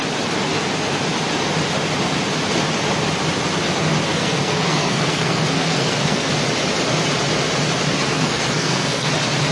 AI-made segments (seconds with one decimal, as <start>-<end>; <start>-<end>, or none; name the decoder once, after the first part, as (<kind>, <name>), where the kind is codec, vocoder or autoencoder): 4.1-6.3 (codec, SNAC); 8.1-9.1